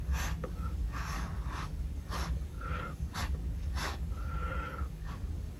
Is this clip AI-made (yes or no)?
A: yes